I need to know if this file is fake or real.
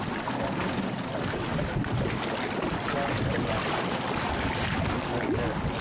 real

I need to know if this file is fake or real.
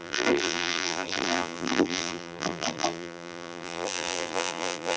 fake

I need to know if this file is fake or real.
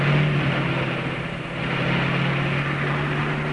real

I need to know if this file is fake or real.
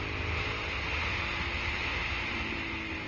real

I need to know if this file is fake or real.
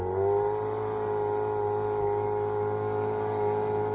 real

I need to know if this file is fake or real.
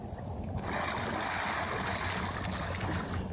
real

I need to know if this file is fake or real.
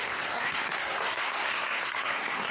fake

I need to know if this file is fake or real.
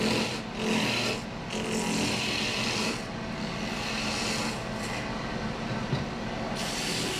real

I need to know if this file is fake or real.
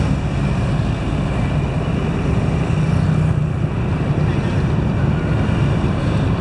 real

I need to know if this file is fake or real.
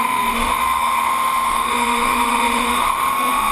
fake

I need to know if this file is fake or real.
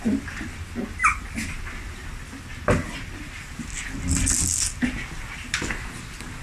real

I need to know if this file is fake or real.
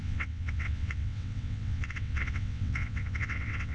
fake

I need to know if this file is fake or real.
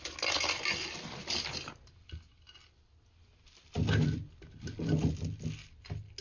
real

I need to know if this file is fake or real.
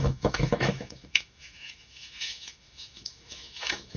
fake